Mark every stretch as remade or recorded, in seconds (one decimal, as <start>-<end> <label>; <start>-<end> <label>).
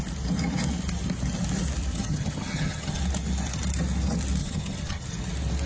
0.0-1.9 recorded; 1.9-3.0 remade; 3.0-4.4 recorded; 4.4-5.0 remade; 5.0-5.7 recorded